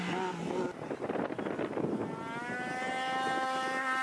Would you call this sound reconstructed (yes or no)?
no